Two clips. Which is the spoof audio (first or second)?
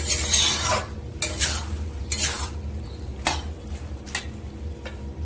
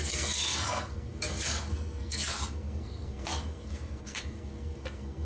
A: second